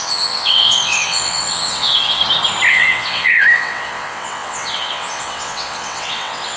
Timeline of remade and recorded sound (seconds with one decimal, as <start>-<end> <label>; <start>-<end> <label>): 0.0-2.2 remade; 2.2-2.7 recorded; 2.7-6.6 remade